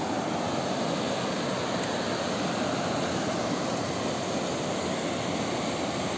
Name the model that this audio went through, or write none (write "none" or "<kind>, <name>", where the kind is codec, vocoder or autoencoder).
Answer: none